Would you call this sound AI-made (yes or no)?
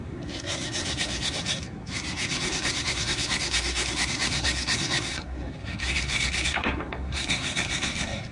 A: yes